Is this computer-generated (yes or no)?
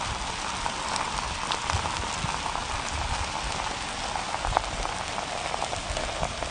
no